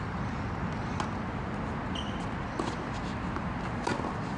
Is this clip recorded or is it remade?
recorded